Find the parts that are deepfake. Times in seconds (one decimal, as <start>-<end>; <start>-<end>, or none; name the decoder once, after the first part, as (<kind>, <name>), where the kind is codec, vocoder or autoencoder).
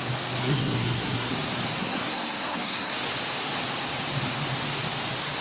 0.4-1.3 (codec, SNAC); 1.8-2.9